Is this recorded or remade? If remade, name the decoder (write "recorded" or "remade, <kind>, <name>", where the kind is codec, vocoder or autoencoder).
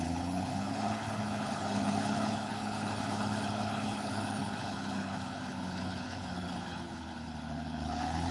remade, codec, HILCodec